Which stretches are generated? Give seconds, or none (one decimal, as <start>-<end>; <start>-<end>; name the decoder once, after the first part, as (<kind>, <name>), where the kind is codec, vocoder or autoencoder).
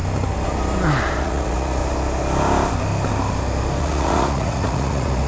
1.2-1.8 (vocoder, Vocos); 3.8-5.3